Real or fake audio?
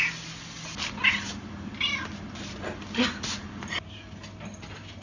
real